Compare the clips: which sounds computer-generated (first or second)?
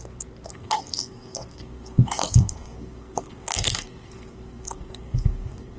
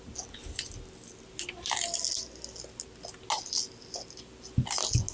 first